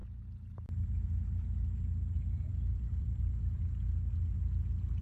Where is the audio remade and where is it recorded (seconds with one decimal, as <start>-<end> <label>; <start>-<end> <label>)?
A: 0.0-5.0 recorded